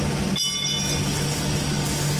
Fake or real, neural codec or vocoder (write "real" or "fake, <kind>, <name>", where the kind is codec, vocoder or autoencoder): real